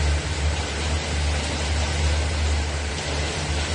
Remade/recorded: recorded